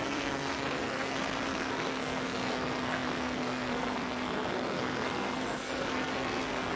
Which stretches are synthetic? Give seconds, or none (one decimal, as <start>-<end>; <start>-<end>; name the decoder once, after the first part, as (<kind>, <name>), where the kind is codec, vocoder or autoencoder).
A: 0.0-6.8 (codec, SNAC)

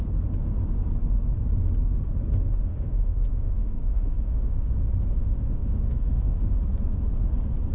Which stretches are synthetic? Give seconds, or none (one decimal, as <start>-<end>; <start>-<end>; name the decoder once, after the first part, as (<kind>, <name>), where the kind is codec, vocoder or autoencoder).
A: 2.7-4.7 (autoencoder, DAC-VAE); 5.2-6.4

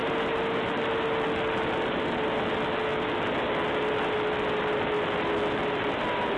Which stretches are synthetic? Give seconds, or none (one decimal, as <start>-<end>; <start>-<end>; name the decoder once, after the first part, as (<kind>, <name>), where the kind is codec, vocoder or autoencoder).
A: none

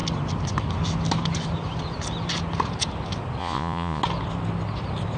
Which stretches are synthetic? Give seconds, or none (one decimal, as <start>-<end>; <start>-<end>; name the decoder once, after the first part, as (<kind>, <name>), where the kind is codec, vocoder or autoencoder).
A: 3.4-4.0 (vocoder, Vocos)

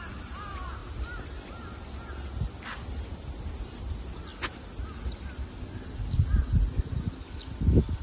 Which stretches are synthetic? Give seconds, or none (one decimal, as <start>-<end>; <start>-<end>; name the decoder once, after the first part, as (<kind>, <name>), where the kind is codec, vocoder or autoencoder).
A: none

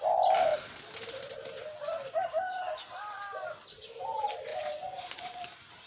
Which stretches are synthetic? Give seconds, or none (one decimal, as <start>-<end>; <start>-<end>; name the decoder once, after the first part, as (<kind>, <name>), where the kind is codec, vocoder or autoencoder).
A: 4.5-5.4 (vocoder, Vocos)

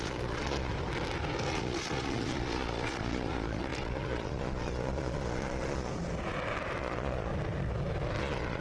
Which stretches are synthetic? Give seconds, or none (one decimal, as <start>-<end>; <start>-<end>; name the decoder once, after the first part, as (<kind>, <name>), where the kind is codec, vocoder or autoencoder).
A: 0.0-0.7 (vocoder, Vocos); 1.5-5.9; 6.8-7.3; 8.2-8.6

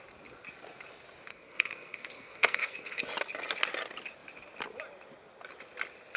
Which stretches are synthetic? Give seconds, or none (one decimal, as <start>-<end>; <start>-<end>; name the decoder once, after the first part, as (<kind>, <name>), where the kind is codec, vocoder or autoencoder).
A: 1.3-3.0 (codec, SNAC)